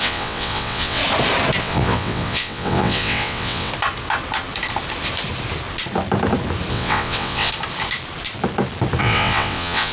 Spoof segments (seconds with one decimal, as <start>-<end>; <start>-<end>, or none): 0.0-1.0; 1.6-3.7; 6.7-7.5; 9.0-9.9